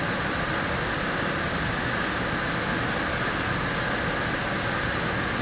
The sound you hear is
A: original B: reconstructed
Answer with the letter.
A